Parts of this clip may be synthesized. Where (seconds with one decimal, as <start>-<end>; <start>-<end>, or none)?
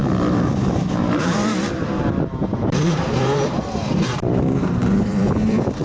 0.9-5.8